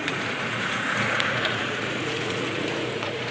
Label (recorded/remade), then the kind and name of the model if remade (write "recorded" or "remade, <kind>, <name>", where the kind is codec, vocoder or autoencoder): remade, vocoder, Vocos